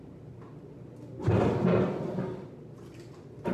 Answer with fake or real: real